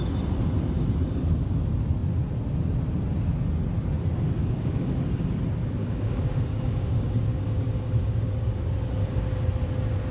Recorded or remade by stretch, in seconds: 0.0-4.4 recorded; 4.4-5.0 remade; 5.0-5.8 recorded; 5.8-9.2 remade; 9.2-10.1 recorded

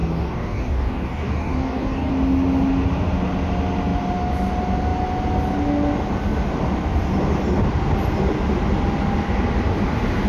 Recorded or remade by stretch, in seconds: 0.0-2.1 remade; 2.1-10.3 recorded

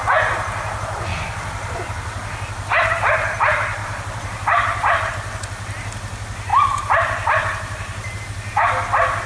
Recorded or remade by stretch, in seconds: 0.0-3.8 recorded; 3.8-5.1 remade; 5.1-6.5 recorded; 6.5-8.2 remade; 8.2-9.3 recorded

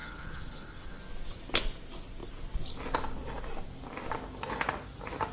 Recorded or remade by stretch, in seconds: 0.0-1.0 remade; 1.0-5.3 recorded

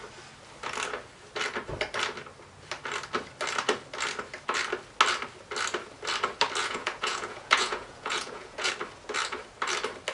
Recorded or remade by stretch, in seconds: 0.0-6.6 recorded; 6.6-8.7 remade; 8.7-10.1 recorded

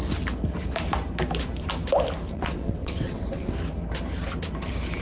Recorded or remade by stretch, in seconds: 0.0-2.3 recorded; 2.3-3.5 remade; 3.5-5.0 recorded

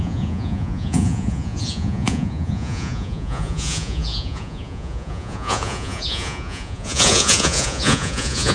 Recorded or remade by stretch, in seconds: 0.0-8.5 remade

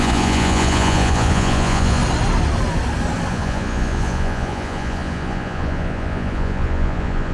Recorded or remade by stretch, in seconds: 0.0-2.0 remade; 2.0-3.3 recorded; 3.3-7.3 remade